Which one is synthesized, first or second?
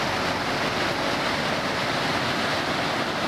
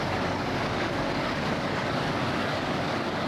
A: second